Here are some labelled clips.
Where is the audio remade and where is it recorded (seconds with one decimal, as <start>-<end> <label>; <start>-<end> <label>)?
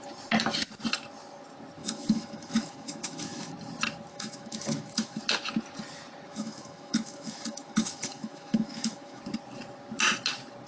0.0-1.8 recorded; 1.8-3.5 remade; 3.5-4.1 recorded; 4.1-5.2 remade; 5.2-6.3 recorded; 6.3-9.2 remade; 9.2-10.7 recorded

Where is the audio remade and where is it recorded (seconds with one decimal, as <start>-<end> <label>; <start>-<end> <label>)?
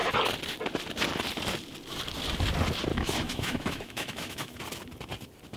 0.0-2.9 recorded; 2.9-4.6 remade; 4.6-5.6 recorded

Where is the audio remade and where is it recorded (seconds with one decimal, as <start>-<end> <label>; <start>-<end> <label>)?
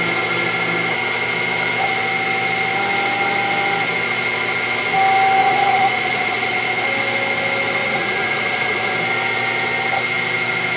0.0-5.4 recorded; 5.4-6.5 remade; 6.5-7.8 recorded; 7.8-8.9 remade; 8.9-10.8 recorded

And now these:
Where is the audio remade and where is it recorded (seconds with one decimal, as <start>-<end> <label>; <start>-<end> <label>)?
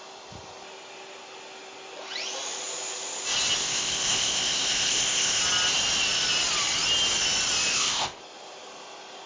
0.0-3.6 recorded; 3.6-5.4 remade; 5.4-7.7 recorded; 7.7-8.2 remade; 8.2-9.3 recorded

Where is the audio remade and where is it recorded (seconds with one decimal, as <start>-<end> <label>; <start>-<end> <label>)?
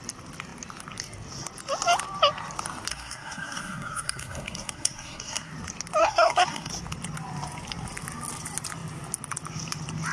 0.0-2.9 recorded; 2.9-5.5 remade; 5.5-6.0 recorded; 6.0-6.7 remade; 6.7-10.1 recorded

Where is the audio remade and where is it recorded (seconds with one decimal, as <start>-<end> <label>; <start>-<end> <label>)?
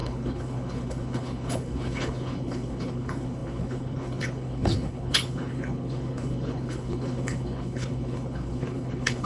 0.0-9.3 remade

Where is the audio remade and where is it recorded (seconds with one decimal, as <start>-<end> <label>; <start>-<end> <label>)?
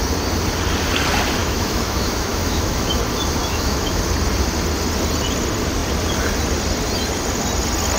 0.0-1.4 recorded; 1.4-3.0 remade; 3.0-3.4 recorded; 3.4-4.0 remade; 4.0-8.0 recorded